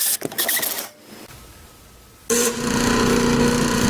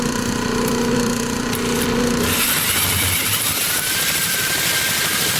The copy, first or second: second